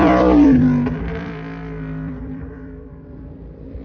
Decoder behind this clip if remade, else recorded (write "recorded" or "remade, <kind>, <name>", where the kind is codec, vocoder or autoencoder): remade, vocoder, BigVGAN v2